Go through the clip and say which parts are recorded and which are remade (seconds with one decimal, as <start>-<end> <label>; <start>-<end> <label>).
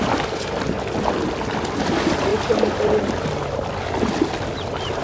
0.0-5.0 recorded